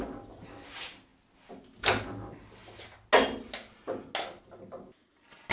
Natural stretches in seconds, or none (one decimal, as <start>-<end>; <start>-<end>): 0.0-5.5